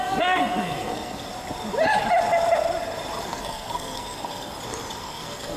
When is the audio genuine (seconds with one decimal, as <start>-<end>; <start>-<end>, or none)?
1.3-3.2; 4.5-5.0